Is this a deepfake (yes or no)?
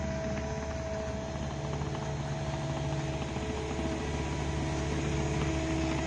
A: no